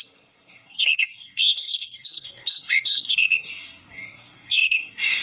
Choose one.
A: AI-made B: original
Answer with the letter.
A